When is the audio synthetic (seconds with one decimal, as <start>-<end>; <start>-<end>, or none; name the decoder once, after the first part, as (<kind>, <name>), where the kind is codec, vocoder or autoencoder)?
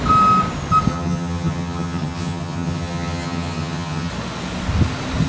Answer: 0.9-4.1 (vocoder, HiFi-GAN)